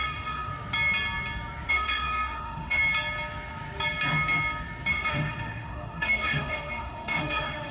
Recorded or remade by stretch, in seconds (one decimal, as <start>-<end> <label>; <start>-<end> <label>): 0.0-0.5 remade; 0.5-1.7 recorded; 1.7-2.8 remade; 2.8-4.9 recorded; 4.9-7.7 remade